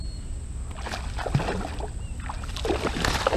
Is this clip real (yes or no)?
yes